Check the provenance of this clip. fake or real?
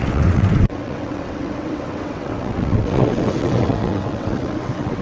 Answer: fake